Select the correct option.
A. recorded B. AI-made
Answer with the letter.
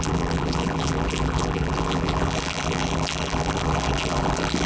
B